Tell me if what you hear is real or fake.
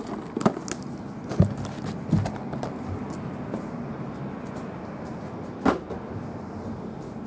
real